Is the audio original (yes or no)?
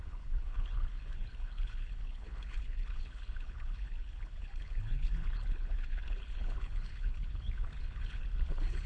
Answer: no